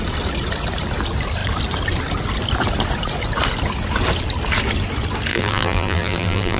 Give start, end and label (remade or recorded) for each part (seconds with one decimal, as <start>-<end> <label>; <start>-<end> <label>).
0.0-5.3 recorded; 5.3-6.6 remade